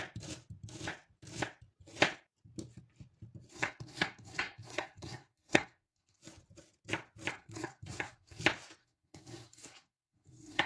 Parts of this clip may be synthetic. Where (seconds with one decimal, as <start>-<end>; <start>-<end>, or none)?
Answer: 3.5-6.2; 7.3-8.4; 8.8-10.7